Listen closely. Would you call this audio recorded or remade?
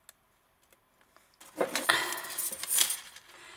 recorded